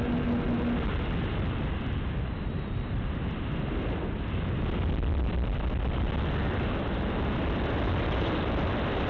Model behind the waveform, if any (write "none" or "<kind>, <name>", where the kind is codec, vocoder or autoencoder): none